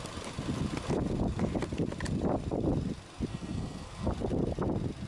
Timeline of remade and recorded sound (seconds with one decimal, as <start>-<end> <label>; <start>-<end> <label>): 0.0-3.3 recorded; 3.3-4.1 remade; 4.1-5.1 recorded